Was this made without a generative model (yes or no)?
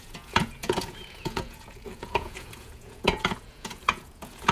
no